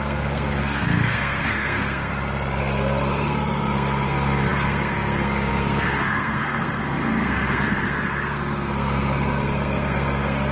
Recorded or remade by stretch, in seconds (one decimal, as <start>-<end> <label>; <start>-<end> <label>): 0.0-2.1 remade; 2.1-2.6 recorded; 2.6-10.5 remade

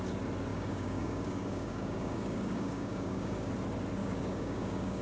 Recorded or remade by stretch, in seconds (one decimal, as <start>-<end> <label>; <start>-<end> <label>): 0.0-0.5 recorded; 0.5-3.5 remade; 3.5-4.0 recorded; 4.0-5.0 remade

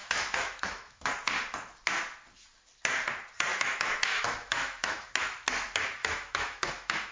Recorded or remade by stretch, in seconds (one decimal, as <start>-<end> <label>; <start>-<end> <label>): 0.0-1.1 remade; 1.1-3.5 recorded; 3.5-5.1 remade; 5.1-6.0 recorded; 6.0-7.1 remade

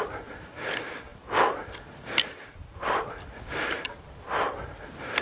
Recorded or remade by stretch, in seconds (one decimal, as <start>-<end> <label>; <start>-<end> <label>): 0.0-5.2 remade

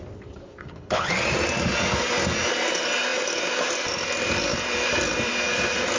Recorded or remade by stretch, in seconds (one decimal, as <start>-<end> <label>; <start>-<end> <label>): 0.0-0.6 recorded; 0.6-1.1 remade; 1.1-6.0 recorded

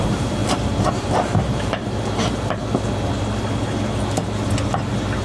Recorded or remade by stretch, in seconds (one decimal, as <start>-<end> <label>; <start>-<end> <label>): 0.0-0.4 remade; 0.4-0.9 recorded; 0.9-2.6 remade; 2.6-4.7 recorded; 4.7-5.2 remade

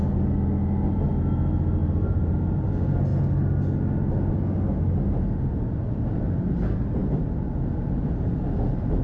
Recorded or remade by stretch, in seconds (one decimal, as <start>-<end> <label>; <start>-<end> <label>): 0.0-1.8 recorded; 1.8-2.7 remade; 2.7-9.0 recorded